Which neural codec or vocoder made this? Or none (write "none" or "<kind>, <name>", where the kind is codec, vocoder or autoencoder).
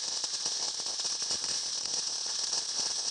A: vocoder, Vocos